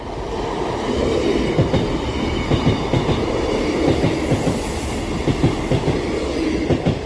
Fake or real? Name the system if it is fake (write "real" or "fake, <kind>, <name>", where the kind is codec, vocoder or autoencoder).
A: real